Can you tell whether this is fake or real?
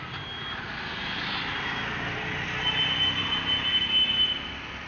real